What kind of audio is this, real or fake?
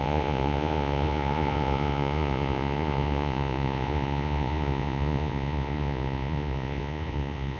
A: fake